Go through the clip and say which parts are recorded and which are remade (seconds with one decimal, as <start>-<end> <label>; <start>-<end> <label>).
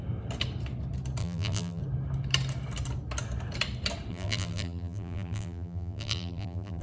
0.0-1.2 recorded; 1.2-1.8 remade; 1.8-4.1 recorded; 4.1-6.8 remade